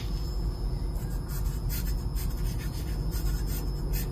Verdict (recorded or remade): recorded